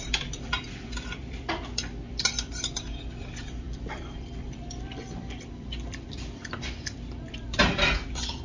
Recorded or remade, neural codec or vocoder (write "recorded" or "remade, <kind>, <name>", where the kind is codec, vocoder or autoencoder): remade, vocoder, BigVGAN v2